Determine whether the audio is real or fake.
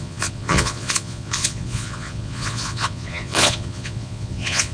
fake